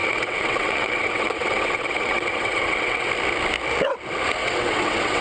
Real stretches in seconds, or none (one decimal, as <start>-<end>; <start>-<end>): 3.1-4.4